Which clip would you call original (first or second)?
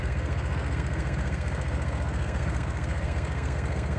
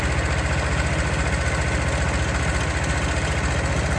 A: second